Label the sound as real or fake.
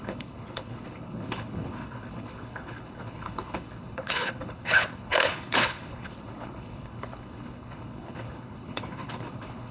fake